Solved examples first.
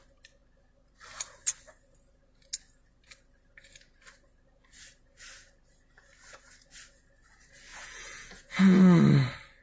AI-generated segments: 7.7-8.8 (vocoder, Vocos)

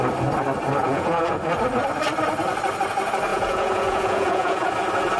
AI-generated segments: 0.8-1.4 (vocoder, Vocos); 3.3-4.7